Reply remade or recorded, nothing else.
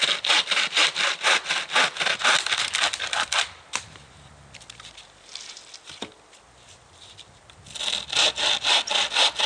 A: recorded